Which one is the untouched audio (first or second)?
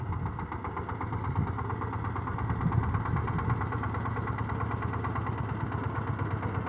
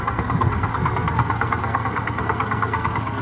first